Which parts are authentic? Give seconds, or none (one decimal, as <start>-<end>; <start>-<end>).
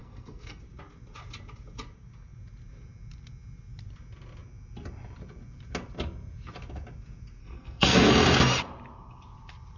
0.6-7.4; 8.1-9.8